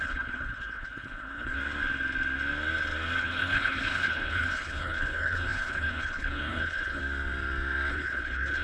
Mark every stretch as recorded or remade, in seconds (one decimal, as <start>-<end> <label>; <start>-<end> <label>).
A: 0.0-1.6 remade; 1.6-3.2 recorded; 3.2-7.0 remade; 7.0-7.9 recorded; 7.9-8.6 remade